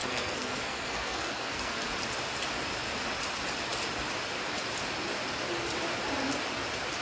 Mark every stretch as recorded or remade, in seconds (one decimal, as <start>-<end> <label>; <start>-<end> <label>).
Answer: 0.0-1.9 remade; 1.9-7.0 recorded